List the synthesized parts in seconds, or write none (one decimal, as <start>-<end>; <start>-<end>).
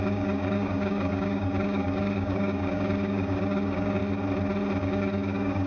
0.0-4.0; 4.8-5.7